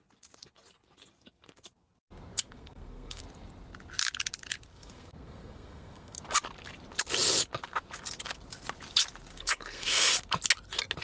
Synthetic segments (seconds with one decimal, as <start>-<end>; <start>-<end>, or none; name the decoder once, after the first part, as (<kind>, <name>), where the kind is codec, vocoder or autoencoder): 2.3-3.2 (codec, SNAC); 4.7-6.2; 9.3-10.1